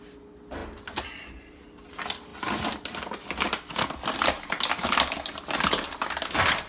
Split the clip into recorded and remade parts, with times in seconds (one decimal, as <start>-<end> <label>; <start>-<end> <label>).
0.0-6.7 recorded